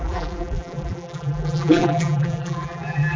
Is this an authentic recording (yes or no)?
no